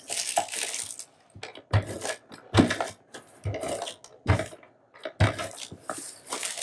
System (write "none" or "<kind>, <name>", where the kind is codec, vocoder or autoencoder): none